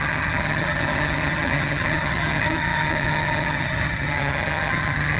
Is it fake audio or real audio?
fake